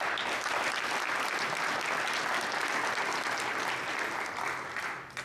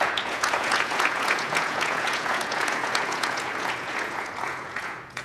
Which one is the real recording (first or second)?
first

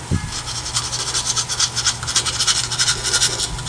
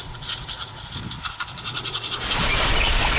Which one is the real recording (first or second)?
first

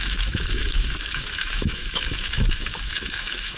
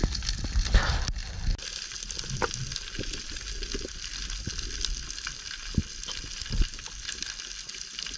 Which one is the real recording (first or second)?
second